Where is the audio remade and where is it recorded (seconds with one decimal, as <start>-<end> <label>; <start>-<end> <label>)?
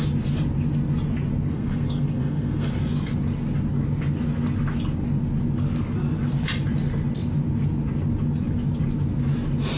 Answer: 0.0-1.5 recorded; 1.5-2.7 remade; 2.7-9.8 recorded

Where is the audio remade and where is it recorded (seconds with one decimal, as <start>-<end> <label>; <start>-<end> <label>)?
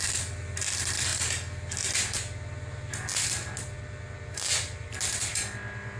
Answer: 0.0-6.0 recorded